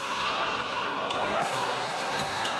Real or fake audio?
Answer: fake